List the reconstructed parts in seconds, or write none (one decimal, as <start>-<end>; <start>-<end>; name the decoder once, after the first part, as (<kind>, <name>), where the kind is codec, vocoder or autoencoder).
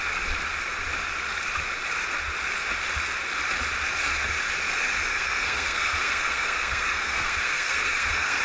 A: 5.1-8.4 (codec, SNAC)